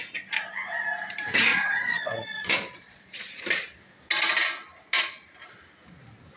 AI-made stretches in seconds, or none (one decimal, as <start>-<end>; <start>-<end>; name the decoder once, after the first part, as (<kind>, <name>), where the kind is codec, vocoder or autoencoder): 1.5-3.4 (vocoder, Vocos)